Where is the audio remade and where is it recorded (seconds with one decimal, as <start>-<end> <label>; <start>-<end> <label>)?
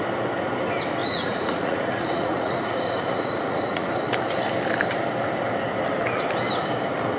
0.0-1.0 recorded; 1.0-3.9 remade; 3.9-7.2 recorded